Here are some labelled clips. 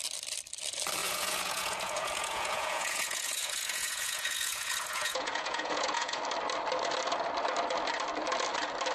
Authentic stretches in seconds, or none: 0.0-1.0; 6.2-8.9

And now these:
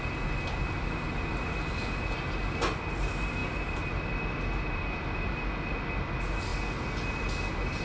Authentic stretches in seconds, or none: 0.0-7.8

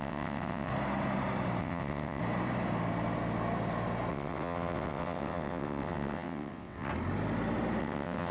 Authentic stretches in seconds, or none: 0.7-1.6; 2.2-4.1; 6.9-7.8

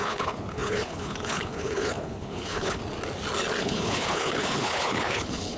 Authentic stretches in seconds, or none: 2.8-3.6

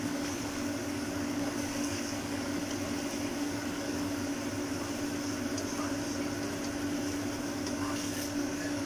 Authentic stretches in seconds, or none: 2.6-3.3; 4.3-7.4

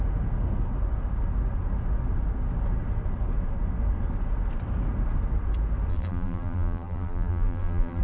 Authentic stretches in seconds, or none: 0.0-5.9

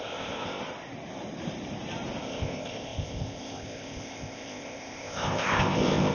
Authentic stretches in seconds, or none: 0.6-2.2

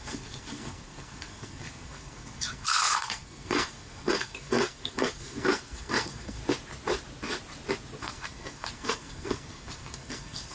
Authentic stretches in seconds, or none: 6.4-8.0